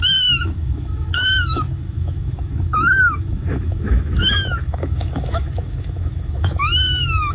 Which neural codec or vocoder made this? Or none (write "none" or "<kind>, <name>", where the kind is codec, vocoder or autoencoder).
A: autoencoder, DAC-VAE